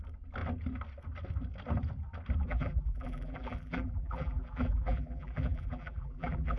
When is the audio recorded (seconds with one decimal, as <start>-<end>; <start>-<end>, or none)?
0.0-2.5